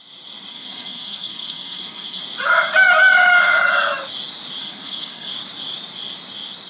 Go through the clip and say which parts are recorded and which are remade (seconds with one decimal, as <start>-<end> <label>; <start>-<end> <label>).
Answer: 0.0-0.5 recorded; 0.5-2.2 remade; 2.2-4.6 recorded; 4.6-5.3 remade; 5.3-6.7 recorded